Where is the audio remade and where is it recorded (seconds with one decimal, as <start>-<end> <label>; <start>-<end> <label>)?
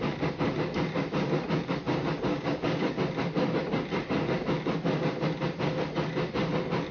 0.0-2.3 recorded; 2.3-2.9 remade; 2.9-6.9 recorded